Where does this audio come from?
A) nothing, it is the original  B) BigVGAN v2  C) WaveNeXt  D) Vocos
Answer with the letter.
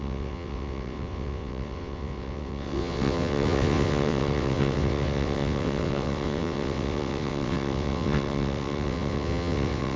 C